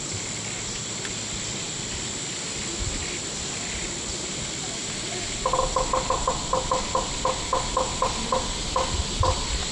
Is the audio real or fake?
real